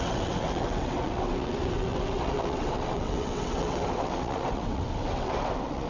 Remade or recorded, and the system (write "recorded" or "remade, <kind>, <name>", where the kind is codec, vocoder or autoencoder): remade, vocoder, WaveNeXt